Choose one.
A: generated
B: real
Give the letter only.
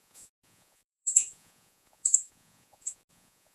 A